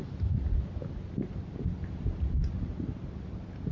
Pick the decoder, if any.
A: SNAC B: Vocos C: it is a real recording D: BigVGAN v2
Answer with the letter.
C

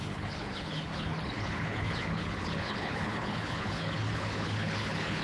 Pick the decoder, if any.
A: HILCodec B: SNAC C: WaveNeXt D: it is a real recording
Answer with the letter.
A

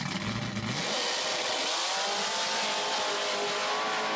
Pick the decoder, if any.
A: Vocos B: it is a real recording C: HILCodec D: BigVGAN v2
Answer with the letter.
B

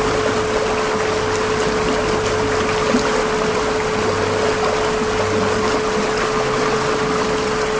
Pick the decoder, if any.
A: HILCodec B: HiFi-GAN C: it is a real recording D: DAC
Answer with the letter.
C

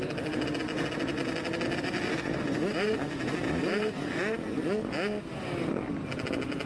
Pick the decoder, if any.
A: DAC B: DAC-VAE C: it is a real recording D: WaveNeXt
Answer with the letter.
C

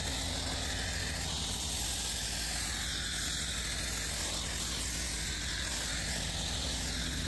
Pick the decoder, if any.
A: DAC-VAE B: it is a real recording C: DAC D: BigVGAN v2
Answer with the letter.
B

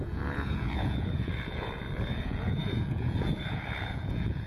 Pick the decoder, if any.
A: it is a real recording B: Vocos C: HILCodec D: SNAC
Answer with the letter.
B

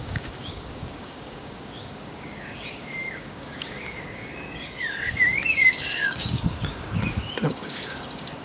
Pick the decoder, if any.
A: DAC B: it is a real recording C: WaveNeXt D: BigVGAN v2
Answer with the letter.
A